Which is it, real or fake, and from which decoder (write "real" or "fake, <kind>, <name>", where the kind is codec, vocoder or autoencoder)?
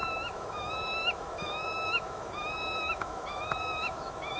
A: fake, autoencoder, DAC-VAE